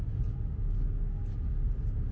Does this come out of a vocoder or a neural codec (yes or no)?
no